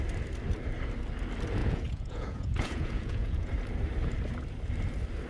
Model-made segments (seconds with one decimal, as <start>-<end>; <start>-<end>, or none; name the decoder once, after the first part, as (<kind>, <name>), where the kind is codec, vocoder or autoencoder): 1.6-3.5 (vocoder, Vocos)